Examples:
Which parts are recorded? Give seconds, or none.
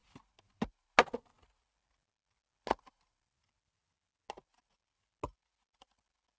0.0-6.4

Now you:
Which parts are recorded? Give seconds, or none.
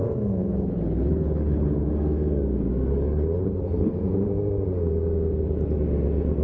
0.0-0.4; 1.9-2.9; 3.9-6.4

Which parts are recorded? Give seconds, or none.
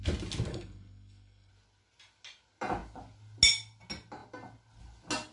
0.0-0.5; 1.5-5.3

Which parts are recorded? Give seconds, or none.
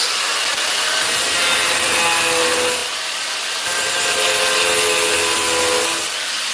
0.0-0.5; 1.1-2.8; 3.5-6.5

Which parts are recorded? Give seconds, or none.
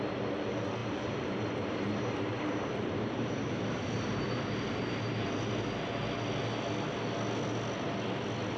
0.0-0.8; 5.2-8.6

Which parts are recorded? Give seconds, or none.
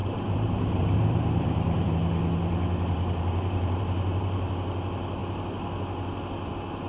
1.9-2.9; 4.5-6.9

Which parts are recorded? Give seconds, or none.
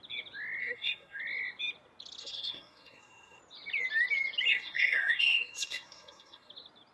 0.0-0.6; 1.2-2.2; 3.4-4.5; 6.5-6.9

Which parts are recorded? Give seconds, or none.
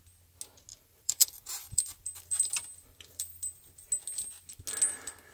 0.0-0.7; 3.9-5.3